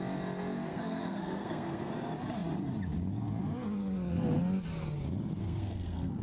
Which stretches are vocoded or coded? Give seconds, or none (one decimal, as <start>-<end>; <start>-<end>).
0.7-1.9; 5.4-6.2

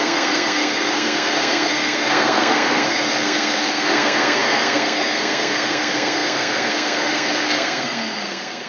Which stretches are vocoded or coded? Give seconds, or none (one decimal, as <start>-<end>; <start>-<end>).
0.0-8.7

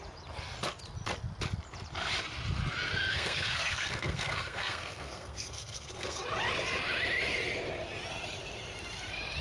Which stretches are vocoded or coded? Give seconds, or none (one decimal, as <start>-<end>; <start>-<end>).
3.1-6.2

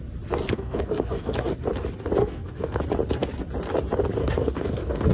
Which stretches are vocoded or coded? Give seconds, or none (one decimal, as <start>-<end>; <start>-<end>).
0.4-1.5; 2.2-2.8; 4.2-5.1